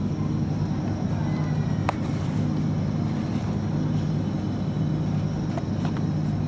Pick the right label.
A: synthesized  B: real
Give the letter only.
B